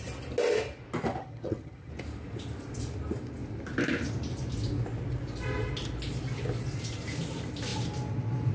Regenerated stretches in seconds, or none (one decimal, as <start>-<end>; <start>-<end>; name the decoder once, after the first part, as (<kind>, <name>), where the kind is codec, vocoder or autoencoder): 1.2-1.9 (vocoder, HiFi-GAN)